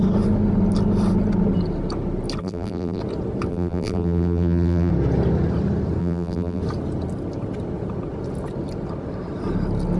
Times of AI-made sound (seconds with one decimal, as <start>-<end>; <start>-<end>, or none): 2.4-3.0; 3.5-4.9; 6.0-6.6